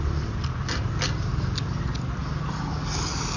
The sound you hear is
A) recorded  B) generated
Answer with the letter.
A